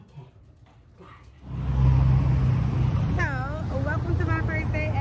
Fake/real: real